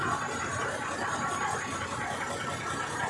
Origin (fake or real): real